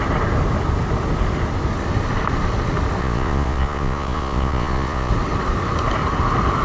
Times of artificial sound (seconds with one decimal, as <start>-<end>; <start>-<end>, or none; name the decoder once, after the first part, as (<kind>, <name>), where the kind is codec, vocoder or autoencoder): 3.0-5.1 (vocoder, Vocos)